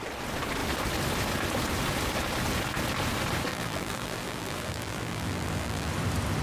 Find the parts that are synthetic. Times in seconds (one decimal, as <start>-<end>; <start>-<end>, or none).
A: 3.5-5.9